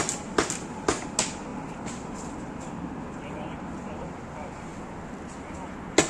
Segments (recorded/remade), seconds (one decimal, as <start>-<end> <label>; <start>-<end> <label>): 0.0-6.1 recorded